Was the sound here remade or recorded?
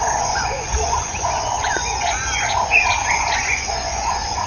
remade